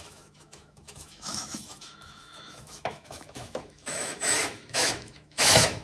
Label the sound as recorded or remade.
remade